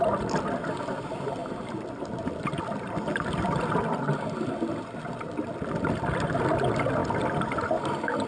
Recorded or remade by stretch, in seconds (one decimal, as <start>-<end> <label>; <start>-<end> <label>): 0.0-8.3 recorded